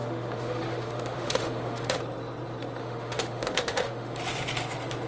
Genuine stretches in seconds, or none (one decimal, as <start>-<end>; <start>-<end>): 2.0-2.8; 4.2-5.1